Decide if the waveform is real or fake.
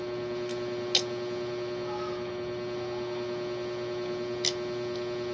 real